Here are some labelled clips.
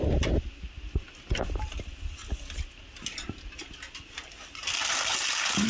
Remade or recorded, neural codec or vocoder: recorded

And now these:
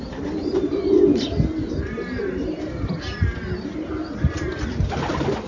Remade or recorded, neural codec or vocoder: recorded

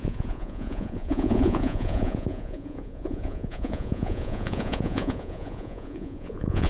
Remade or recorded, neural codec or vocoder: remade, vocoder, Vocos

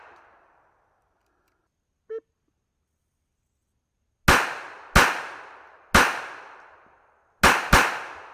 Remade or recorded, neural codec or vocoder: recorded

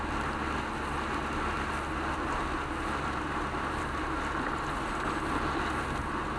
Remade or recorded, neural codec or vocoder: recorded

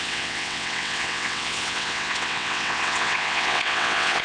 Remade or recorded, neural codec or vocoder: remade, vocoder, WaveNeXt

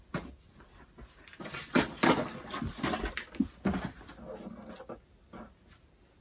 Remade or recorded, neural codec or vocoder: recorded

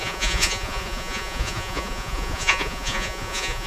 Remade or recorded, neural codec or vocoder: remade, vocoder, Vocos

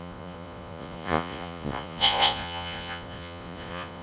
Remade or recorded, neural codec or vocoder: remade, vocoder, Vocos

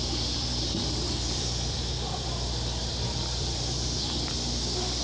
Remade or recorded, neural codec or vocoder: remade, vocoder, BigVGAN v2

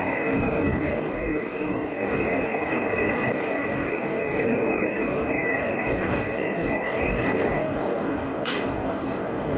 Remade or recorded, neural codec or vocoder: remade, codec, DAC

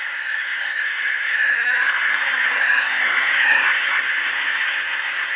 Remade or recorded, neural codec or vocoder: remade, codec, SNAC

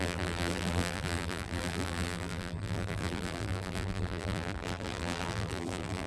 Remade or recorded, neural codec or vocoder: remade, vocoder, BigVGAN v2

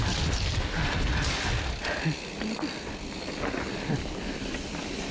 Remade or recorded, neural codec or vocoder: recorded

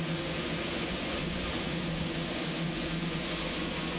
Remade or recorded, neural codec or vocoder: remade, vocoder, Vocos